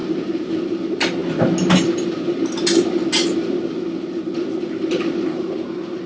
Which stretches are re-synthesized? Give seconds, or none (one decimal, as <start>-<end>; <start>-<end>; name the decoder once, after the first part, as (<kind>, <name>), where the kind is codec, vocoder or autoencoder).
0.0-0.5 (vocoder, BigVGAN v2)